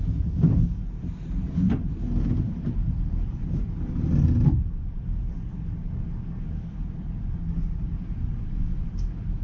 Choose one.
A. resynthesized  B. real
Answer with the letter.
B